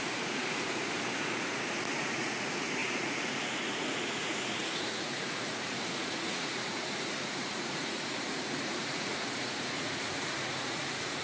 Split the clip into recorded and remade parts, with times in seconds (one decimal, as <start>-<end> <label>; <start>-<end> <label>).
0.0-11.2 remade